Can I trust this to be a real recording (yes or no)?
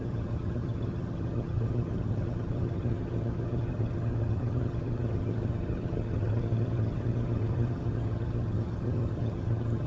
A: no